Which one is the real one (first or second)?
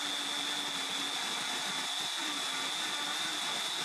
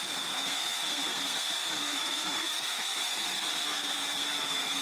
first